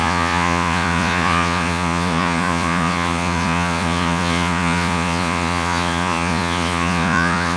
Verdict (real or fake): fake